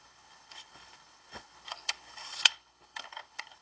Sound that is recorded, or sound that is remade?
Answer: remade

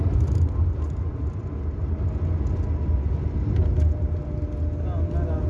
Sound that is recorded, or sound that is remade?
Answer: recorded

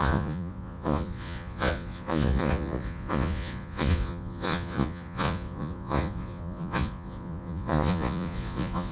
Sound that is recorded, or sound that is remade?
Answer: remade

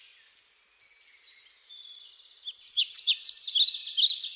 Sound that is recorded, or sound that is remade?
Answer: recorded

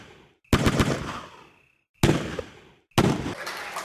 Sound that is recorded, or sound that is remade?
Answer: recorded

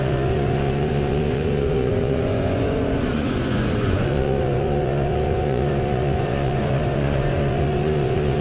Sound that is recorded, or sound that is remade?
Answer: remade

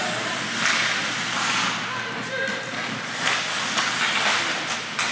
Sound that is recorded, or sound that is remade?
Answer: recorded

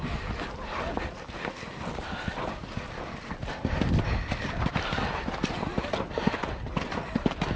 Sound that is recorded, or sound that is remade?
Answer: recorded